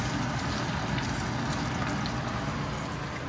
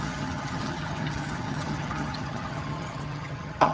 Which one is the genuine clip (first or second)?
first